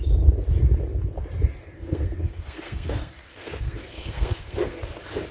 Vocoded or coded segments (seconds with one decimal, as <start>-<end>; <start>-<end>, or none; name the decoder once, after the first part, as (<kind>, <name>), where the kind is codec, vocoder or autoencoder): 1.6-4.8 (codec, SNAC)